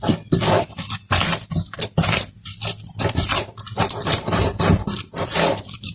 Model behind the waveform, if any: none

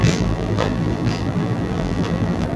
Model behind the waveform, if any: vocoder, BigVGAN v2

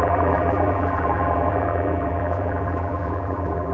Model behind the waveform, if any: vocoder, BigVGAN v2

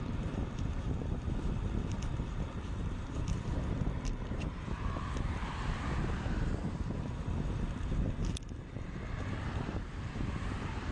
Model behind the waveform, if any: vocoder, BigVGAN v2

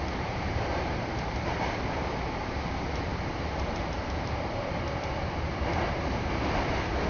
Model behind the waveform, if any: vocoder, BigVGAN v2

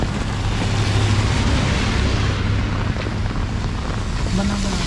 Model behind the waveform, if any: none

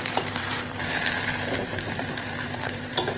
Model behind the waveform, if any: vocoder, BigVGAN v2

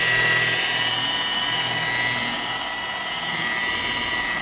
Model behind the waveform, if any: none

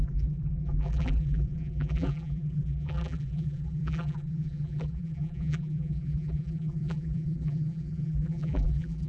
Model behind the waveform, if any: vocoder, BigVGAN v2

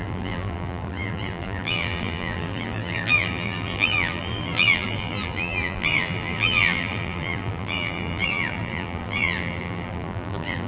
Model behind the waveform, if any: vocoder, BigVGAN v2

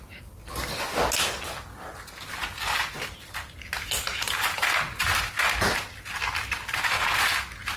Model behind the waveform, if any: none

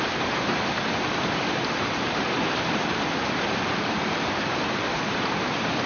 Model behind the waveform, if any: vocoder, BigVGAN v2